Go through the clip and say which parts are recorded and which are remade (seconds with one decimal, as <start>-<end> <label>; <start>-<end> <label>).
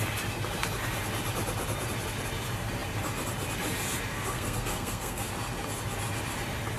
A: 0.0-4.1 recorded; 4.1-5.3 remade; 5.3-6.8 recorded